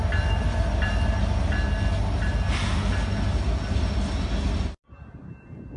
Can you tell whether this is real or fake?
real